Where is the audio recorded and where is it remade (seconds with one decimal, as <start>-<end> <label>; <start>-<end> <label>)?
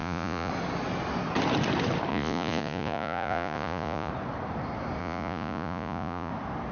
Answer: 0.0-0.5 remade; 0.5-2.1 recorded; 2.1-4.1 remade; 4.1-5.0 recorded; 5.0-6.3 remade; 6.3-6.7 recorded